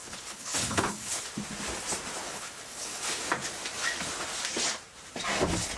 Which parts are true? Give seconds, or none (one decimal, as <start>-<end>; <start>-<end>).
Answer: 1.2-2.2; 3.2-5.8